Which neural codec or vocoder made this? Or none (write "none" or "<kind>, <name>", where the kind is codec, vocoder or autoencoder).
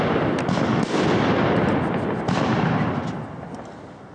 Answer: none